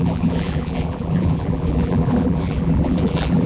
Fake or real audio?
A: fake